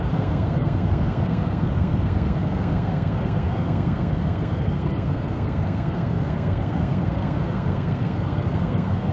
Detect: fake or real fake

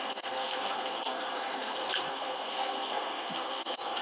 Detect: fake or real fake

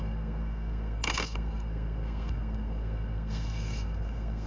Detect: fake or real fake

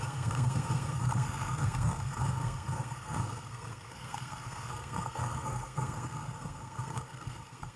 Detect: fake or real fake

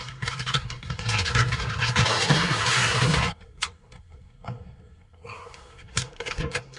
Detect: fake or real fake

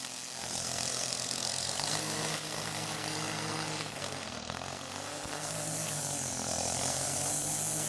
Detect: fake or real fake